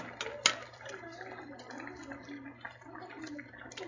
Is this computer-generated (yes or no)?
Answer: no